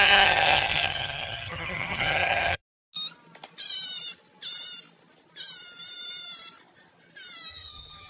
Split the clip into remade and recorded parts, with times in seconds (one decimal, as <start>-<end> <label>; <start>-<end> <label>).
0.0-2.6 remade; 2.6-7.5 recorded; 7.5-8.1 remade